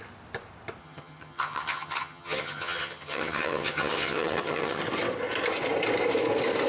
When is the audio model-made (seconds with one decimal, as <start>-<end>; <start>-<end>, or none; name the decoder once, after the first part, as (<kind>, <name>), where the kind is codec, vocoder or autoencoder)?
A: 0.8-4.8 (vocoder, HiFi-GAN)